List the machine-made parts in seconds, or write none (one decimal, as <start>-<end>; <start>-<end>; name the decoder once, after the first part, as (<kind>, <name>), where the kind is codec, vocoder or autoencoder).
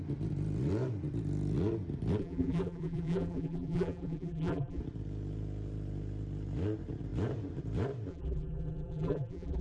2.2-4.8 (vocoder, BigVGAN v2); 8.1-9.6